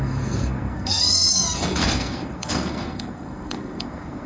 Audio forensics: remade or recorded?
remade